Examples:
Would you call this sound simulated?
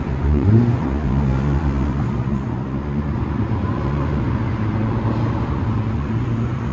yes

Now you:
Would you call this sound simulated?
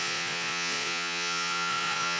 yes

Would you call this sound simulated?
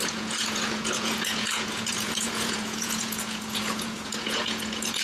yes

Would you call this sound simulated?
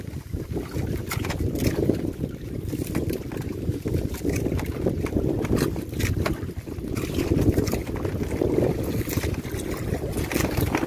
no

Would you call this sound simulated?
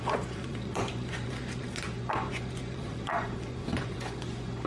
yes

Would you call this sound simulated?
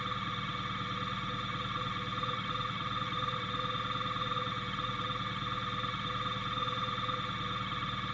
no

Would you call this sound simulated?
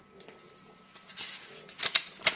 no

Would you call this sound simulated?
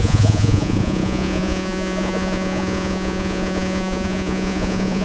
yes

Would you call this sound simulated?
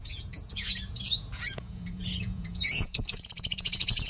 yes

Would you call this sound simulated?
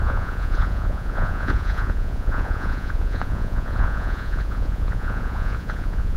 yes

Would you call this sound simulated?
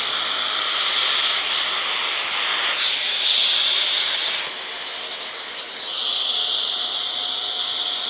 no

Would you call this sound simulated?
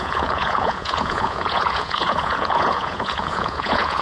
yes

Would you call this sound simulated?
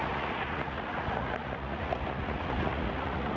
yes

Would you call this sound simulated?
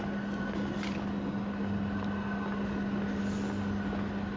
no